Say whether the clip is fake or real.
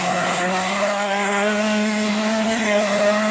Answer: fake